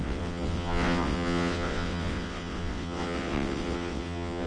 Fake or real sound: fake